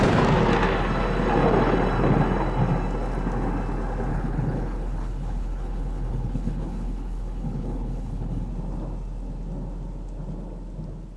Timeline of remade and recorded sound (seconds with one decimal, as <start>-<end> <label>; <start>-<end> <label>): 0.0-4.1 recorded; 4.1-8.5 remade; 8.5-11.2 recorded